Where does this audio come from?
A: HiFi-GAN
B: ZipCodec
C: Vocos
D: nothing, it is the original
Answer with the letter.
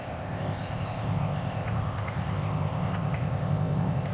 B